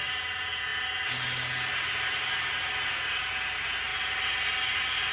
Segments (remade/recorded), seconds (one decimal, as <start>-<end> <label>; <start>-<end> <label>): 0.0-5.1 recorded